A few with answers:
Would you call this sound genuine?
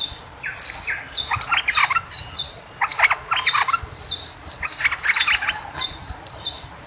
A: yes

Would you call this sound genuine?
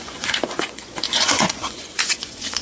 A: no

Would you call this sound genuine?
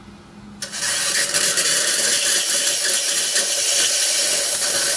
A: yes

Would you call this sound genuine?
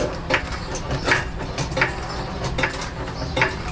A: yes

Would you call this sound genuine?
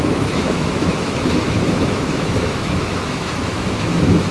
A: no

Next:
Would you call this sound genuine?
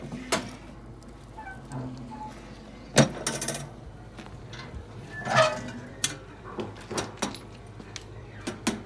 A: yes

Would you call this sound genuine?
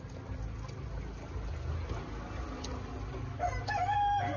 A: yes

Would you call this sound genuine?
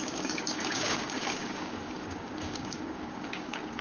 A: no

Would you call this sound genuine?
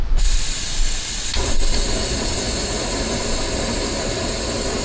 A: yes